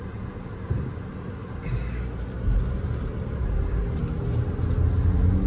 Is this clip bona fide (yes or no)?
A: yes